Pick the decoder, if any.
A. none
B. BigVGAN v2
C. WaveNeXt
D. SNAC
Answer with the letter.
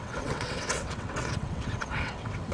C